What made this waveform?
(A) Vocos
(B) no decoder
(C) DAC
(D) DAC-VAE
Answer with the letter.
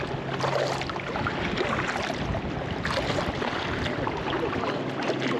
B